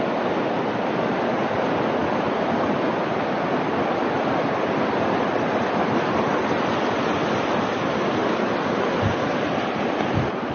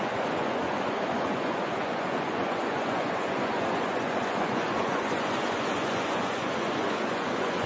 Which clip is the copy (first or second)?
second